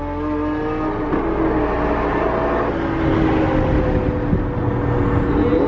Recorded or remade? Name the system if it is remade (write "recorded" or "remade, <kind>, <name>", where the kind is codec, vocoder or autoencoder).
recorded